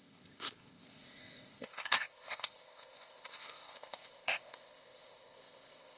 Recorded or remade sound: remade